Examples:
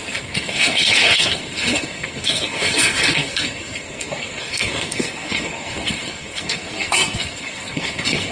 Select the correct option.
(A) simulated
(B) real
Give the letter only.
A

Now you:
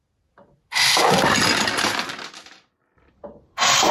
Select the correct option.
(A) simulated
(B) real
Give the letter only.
B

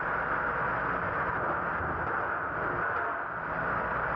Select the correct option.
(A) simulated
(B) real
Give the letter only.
B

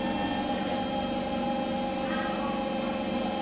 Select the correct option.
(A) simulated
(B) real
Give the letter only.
B